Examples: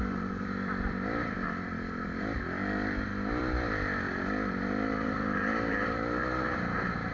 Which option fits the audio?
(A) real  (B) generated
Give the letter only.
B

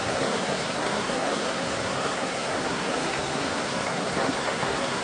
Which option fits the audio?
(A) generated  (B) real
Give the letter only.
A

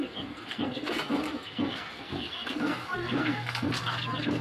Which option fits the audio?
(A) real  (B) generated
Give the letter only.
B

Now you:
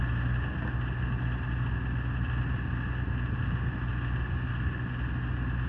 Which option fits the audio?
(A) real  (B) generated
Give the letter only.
A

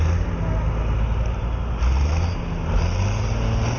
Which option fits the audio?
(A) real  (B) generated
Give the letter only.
A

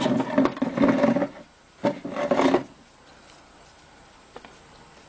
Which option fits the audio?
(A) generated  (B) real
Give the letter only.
B